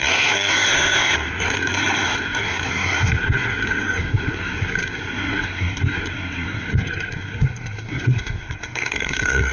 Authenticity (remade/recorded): remade